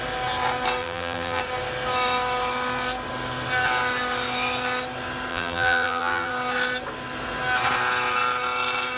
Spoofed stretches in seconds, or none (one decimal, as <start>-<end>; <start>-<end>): 0.8-1.4; 5.3-6.3

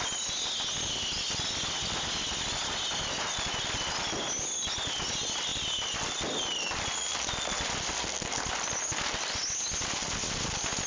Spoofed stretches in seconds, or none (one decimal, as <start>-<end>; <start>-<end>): none

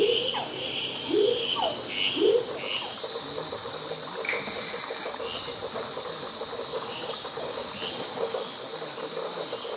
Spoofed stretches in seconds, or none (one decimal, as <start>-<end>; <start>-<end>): 6.7-7.7

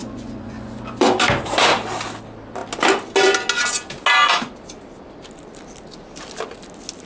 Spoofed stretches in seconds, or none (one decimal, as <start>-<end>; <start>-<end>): 0.0-1.1

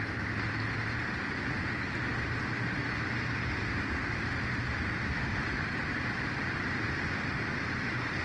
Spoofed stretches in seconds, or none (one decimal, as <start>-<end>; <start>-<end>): 7.3-8.2